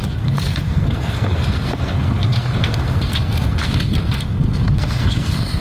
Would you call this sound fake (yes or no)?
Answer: yes